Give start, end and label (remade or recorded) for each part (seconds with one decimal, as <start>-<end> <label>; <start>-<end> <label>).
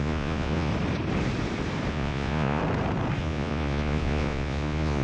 0.0-0.7 remade; 0.7-1.9 recorded; 1.9-2.6 remade; 2.6-3.2 recorded; 3.2-5.0 remade